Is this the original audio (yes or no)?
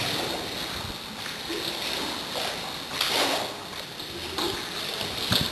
yes